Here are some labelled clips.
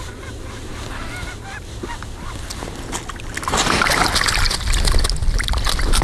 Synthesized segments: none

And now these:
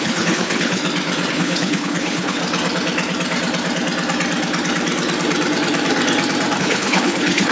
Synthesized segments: 0.0-0.8; 1.3-2.4; 6.6-7.5

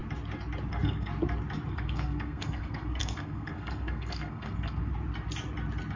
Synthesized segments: 0.7-1.1; 1.7-4.9